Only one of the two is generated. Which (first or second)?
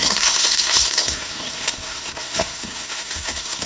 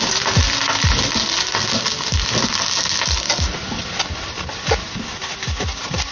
first